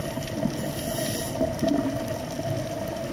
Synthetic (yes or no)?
no